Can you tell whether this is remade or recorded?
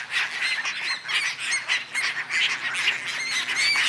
recorded